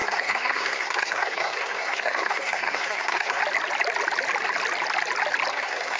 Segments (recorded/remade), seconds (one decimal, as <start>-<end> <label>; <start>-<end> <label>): 0.0-3.4 remade; 3.4-5.5 recorded; 5.5-6.0 remade